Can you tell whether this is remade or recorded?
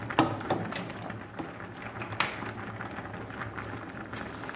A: recorded